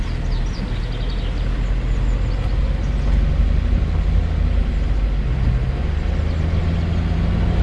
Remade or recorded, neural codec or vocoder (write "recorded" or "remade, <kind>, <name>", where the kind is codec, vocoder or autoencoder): recorded